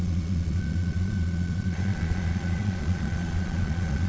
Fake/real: fake